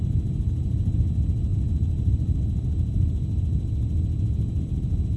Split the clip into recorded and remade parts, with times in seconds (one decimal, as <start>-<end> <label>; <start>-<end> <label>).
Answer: 0.0-5.2 recorded